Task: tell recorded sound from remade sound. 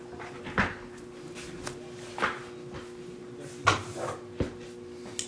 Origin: recorded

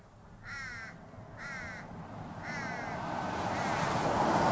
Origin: recorded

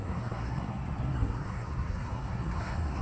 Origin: remade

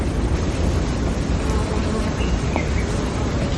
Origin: recorded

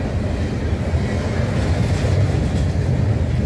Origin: recorded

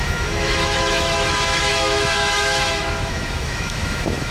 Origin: remade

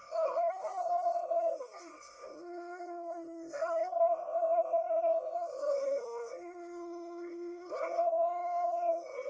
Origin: remade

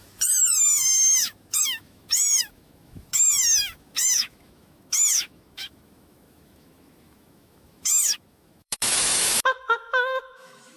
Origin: remade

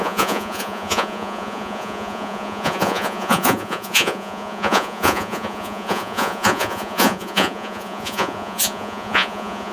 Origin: remade